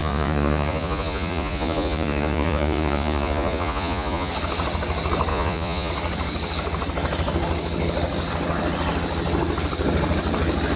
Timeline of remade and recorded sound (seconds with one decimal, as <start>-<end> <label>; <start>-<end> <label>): 0.0-4.3 remade; 4.3-5.3 recorded; 5.3-5.9 remade; 5.9-10.8 recorded